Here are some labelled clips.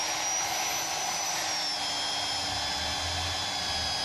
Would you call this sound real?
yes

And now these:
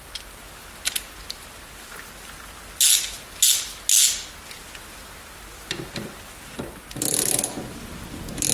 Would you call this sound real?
yes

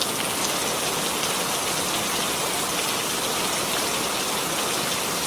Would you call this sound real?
yes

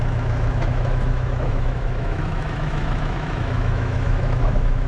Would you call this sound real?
no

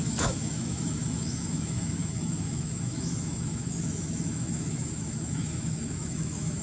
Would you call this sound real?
no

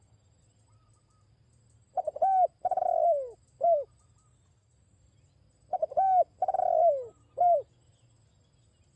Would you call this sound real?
yes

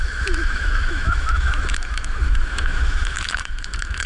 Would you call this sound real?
no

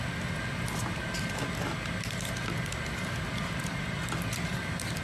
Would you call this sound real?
yes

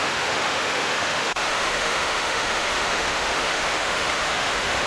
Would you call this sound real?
no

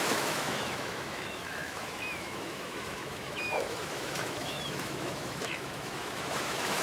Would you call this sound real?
no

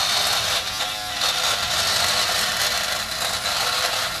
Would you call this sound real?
yes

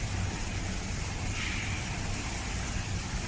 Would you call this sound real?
yes